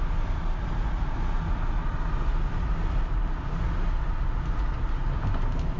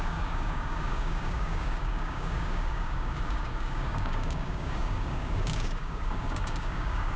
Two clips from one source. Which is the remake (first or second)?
second